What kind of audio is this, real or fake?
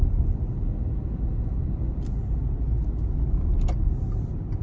real